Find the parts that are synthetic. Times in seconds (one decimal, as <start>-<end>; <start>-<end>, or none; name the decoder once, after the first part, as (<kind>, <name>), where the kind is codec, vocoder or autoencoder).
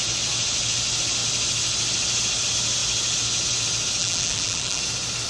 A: 4.0-4.8 (vocoder, BigVGAN v2)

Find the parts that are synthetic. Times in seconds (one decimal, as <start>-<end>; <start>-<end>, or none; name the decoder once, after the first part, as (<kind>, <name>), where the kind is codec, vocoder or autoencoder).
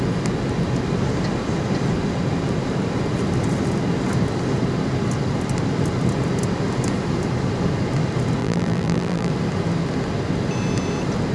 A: 8.4-9.3 (vocoder, BigVGAN v2)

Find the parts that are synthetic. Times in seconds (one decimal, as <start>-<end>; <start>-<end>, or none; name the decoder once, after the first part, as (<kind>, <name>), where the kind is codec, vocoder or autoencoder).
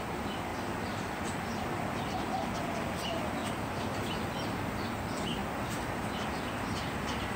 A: 0.5-1.1 (vocoder, BigVGAN v2); 5.4-7.4